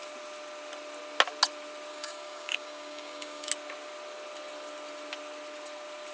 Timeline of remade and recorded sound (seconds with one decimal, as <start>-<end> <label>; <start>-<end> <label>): 0.0-1.9 recorded; 1.9-3.5 remade; 3.5-6.1 recorded